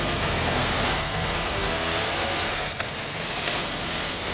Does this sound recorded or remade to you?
remade